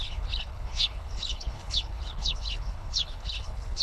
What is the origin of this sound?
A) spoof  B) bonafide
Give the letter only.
A